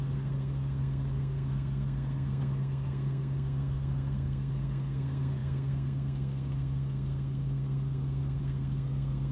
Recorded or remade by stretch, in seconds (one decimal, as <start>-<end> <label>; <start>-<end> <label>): 0.0-9.3 remade